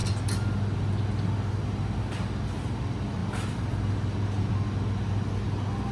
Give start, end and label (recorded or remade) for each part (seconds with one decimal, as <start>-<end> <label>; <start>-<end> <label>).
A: 0.0-5.9 recorded